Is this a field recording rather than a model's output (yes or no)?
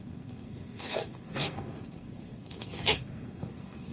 no